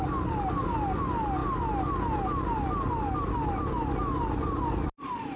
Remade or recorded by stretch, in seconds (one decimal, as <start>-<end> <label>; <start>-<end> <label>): 0.0-5.4 recorded